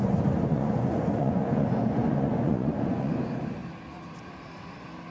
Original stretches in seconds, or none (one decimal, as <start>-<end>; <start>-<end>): 0.0-0.5; 3.2-5.1